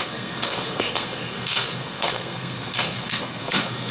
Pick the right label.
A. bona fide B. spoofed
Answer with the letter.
B